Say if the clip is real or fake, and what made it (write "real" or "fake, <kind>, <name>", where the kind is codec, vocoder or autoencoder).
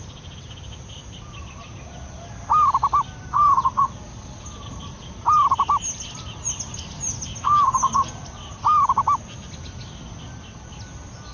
real